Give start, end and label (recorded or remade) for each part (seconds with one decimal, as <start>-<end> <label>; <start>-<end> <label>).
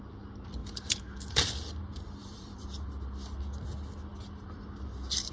0.0-2.2 recorded; 2.2-2.9 remade; 2.9-5.3 recorded